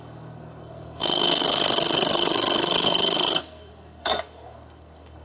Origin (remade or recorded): remade